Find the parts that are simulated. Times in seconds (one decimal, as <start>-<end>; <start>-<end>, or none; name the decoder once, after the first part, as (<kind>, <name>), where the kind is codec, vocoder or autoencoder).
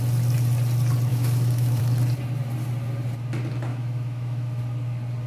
1.1-1.8 (autoencoder, DAC-VAE); 3.7-4.6